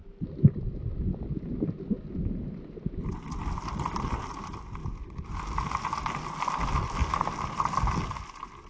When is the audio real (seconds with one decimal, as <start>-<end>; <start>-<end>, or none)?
0.0-8.7